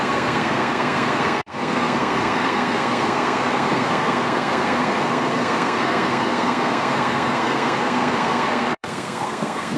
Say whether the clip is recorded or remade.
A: remade